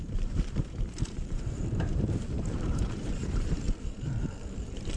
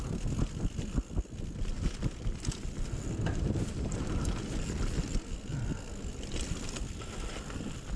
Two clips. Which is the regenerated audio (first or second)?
first